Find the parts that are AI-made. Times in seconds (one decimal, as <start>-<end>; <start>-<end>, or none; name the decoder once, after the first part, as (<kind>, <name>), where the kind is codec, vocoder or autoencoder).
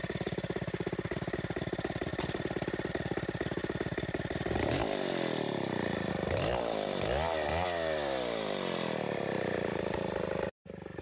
0.0-11.0 (vocoder, BigVGAN v2)